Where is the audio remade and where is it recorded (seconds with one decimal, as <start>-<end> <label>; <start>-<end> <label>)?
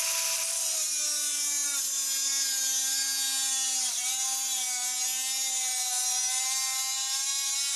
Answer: 0.0-7.8 recorded